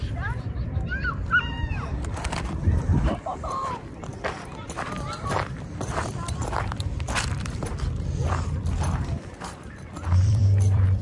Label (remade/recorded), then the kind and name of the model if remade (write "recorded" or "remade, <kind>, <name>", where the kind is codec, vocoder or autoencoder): remade, vocoder, BigVGAN v2